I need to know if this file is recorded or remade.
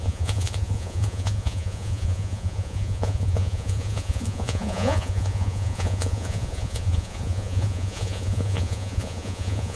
remade